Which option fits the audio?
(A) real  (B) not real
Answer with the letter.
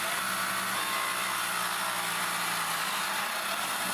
A